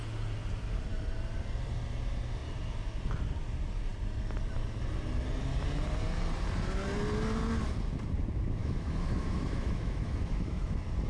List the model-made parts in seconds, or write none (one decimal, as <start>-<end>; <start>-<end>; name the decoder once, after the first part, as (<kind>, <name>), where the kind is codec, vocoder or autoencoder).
8.6-10.7 (autoencoder, DAC-VAE)